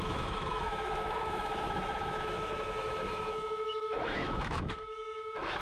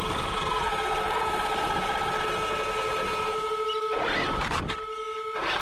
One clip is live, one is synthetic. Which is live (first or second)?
second